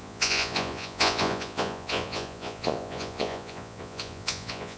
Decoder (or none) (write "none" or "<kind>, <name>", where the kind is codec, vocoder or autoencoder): vocoder, Vocos